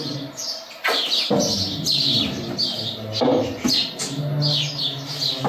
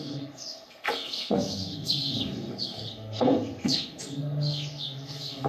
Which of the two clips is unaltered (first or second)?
first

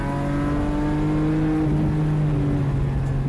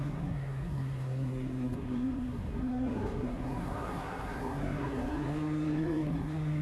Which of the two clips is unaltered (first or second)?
first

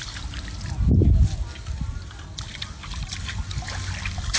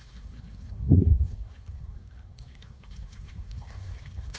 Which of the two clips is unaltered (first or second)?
first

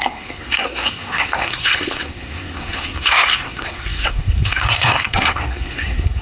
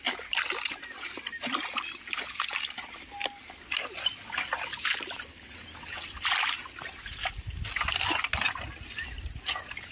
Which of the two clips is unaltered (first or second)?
second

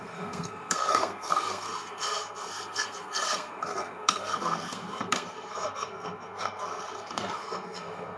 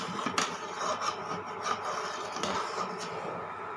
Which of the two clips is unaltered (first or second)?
second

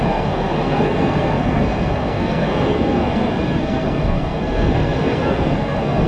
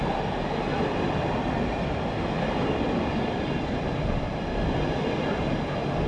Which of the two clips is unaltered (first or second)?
second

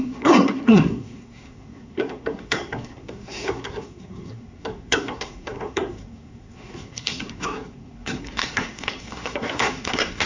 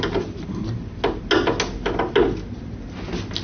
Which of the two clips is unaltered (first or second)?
second